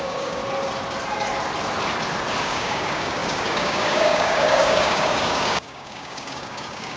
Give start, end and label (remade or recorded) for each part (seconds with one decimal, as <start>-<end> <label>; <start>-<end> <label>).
0.0-0.4 remade; 0.4-2.4 recorded; 2.4-7.0 remade